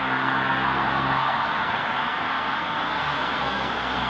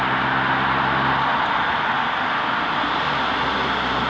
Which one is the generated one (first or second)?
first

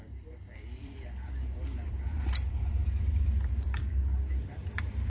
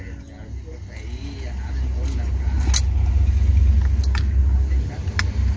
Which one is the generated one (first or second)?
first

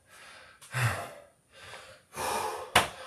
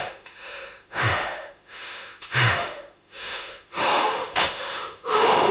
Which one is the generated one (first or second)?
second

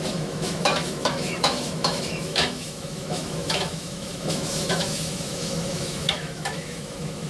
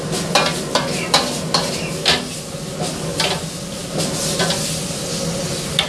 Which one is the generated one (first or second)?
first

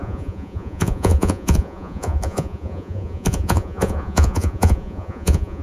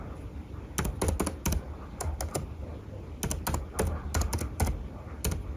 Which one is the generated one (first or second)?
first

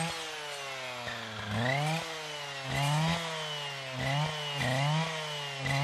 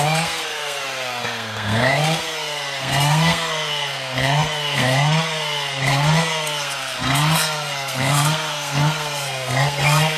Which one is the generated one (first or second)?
second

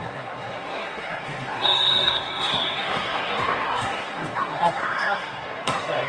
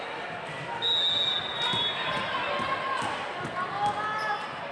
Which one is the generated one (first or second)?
first